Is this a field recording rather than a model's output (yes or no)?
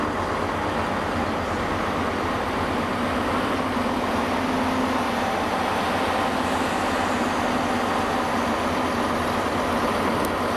yes